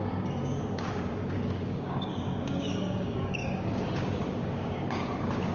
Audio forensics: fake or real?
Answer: fake